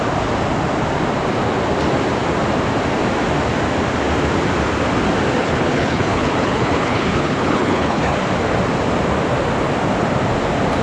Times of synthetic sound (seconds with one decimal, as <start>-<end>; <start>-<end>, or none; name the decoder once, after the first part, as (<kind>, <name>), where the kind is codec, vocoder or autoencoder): 5.4-8.2 (codec, HILCodec)